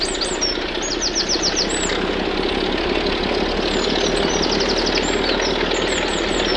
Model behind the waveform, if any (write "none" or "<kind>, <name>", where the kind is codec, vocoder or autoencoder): none